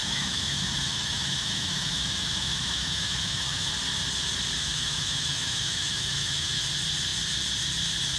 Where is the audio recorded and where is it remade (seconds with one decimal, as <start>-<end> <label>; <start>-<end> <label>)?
0.0-3.7 remade; 3.7-4.6 recorded; 4.6-6.6 remade; 6.6-8.2 recorded

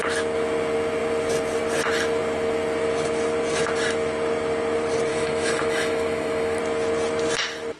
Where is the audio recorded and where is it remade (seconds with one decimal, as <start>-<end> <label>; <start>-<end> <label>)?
0.0-5.1 recorded; 5.1-6.6 remade; 6.6-7.8 recorded